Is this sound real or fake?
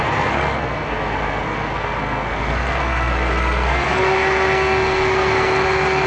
fake